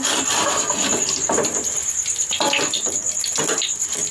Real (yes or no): yes